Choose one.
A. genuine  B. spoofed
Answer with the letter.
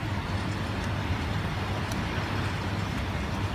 A